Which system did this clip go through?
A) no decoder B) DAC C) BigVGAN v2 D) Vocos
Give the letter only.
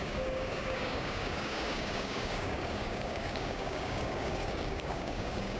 B